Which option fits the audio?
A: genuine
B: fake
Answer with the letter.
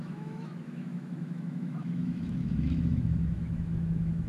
B